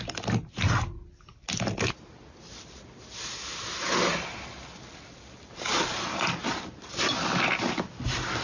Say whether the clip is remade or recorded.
recorded